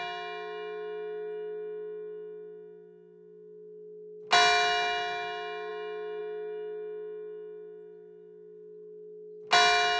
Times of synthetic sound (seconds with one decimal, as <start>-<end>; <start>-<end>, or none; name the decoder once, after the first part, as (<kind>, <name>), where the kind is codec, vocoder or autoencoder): none